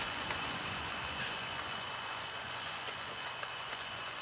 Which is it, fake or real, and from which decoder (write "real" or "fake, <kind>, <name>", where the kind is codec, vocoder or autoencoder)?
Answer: fake, vocoder, Vocos